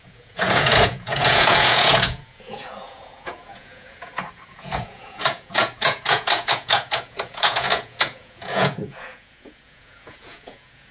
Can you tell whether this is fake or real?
fake